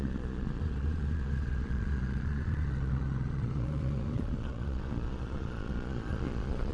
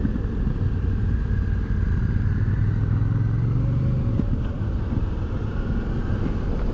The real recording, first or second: second